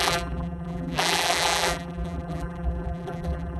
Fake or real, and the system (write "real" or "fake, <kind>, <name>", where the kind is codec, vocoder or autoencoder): fake, vocoder, BigVGAN v2